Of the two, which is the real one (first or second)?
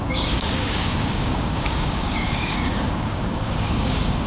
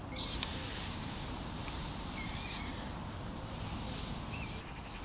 second